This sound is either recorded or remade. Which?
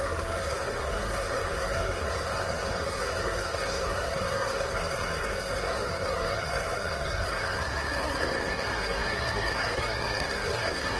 remade